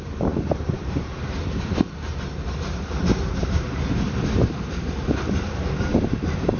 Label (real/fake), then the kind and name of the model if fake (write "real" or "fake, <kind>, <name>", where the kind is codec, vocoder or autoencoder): fake, vocoder, BigVGAN v2